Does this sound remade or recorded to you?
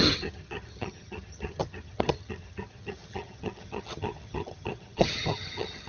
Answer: remade